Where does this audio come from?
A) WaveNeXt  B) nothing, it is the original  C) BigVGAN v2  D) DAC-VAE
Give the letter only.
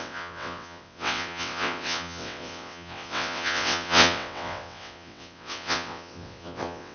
A